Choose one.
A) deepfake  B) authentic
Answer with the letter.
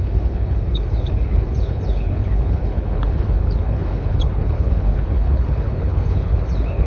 A